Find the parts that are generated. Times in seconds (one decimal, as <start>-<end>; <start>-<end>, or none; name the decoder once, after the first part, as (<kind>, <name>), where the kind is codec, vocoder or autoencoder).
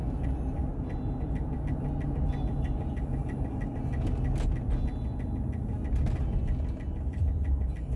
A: none